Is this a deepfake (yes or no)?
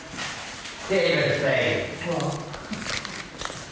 no